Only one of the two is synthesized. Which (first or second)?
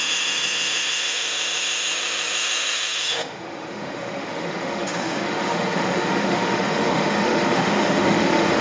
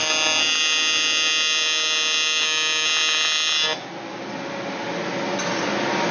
first